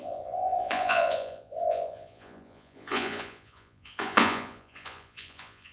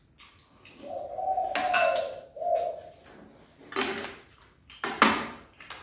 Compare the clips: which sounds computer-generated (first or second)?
first